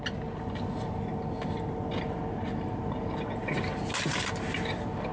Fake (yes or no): no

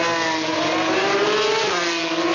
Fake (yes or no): no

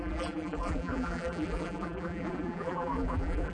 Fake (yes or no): yes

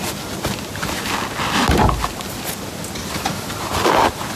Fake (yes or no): no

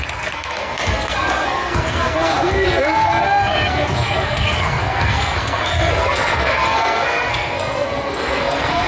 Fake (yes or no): yes